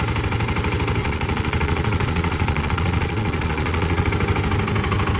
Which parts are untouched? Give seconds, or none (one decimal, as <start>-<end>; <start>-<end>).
0.0-1.0; 4.1-5.2